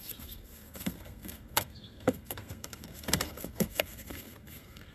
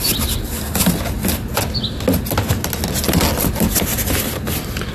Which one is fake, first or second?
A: first